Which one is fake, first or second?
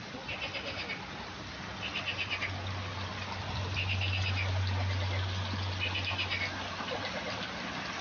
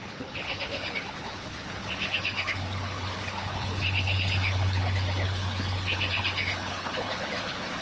second